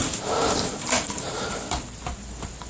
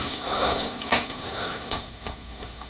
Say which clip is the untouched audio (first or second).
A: first